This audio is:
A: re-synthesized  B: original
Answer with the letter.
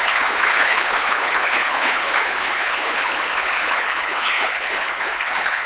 A